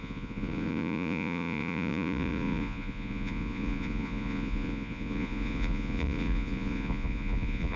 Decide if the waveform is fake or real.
fake